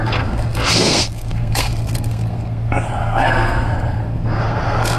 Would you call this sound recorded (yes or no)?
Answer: no